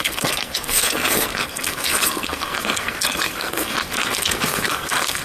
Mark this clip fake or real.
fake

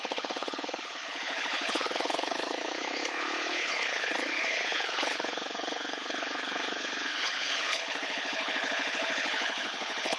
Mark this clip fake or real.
fake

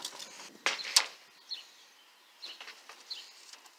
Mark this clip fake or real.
real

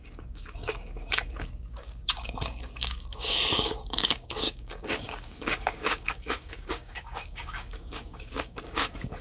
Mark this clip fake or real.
fake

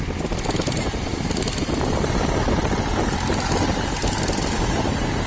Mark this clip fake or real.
real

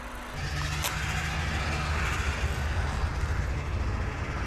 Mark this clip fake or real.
real